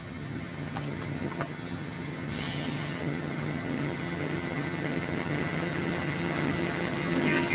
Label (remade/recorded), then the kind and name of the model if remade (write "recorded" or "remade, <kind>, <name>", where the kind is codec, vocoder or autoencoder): remade, vocoder, HiFi-GAN